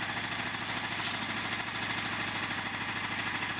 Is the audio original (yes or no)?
yes